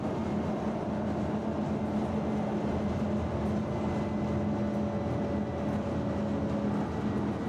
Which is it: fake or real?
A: real